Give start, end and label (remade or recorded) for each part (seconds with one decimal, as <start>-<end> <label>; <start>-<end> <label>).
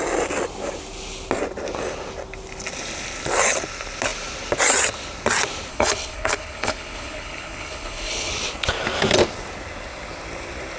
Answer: 0.0-5.7 recorded; 5.7-8.3 remade; 8.3-10.8 recorded